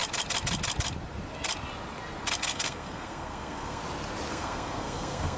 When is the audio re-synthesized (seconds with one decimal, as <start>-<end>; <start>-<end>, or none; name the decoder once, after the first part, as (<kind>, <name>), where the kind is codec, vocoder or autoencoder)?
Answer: 2.4-3.8 (codec, SNAC); 4.3-5.4